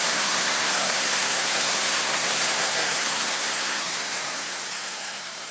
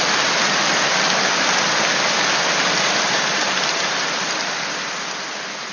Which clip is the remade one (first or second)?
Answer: first